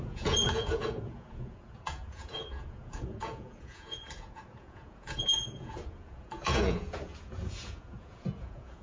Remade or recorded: remade